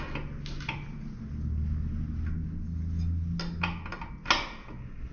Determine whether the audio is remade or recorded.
recorded